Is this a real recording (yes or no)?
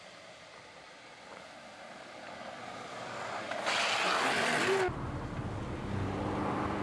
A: yes